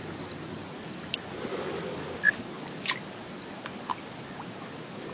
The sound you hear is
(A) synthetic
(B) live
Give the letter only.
B